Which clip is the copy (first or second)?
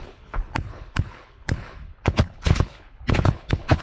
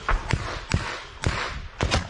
first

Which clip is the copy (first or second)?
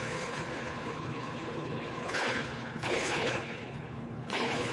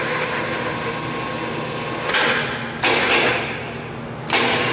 first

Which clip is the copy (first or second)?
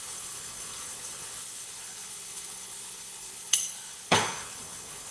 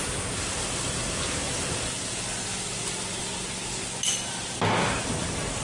first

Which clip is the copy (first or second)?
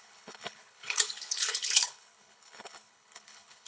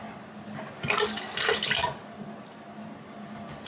first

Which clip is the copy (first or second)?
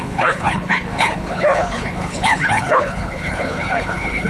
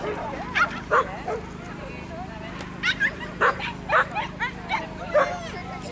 first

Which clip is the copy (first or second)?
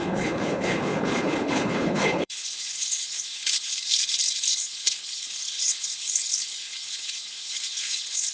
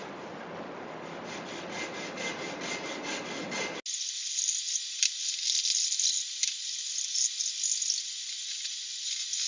first